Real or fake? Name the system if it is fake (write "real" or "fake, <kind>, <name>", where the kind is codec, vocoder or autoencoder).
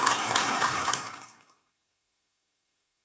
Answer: fake, codec, SNAC